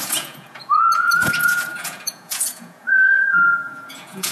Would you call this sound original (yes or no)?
no